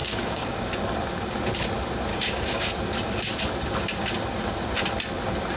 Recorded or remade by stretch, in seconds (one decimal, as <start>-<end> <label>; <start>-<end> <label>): 0.0-0.7 remade; 0.7-2.1 recorded; 2.1-2.7 remade; 2.7-5.6 recorded